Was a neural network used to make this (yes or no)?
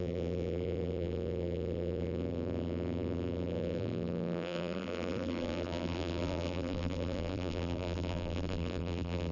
yes